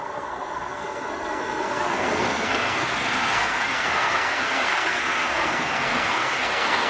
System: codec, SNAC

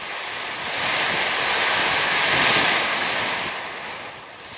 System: none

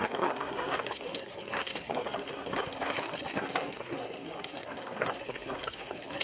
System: codec, SNAC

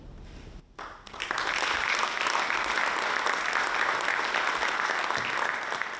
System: none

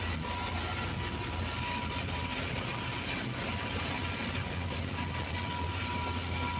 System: none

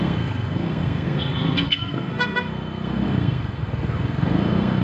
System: codec, SNAC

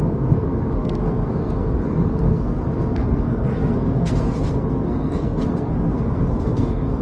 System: codec, SNAC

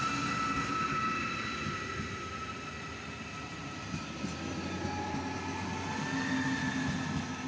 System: none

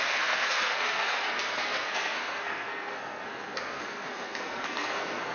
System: codec, SNAC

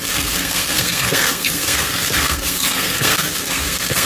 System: codec, SNAC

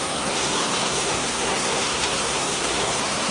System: codec, SNAC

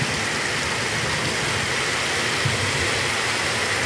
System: none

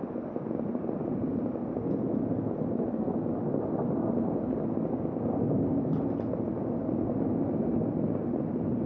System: none